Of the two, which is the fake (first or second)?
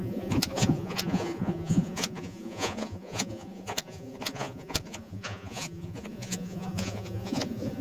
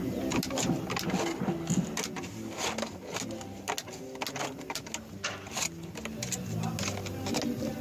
first